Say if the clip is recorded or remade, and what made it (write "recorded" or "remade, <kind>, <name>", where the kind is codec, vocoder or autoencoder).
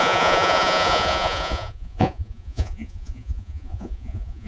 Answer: remade, vocoder, Vocos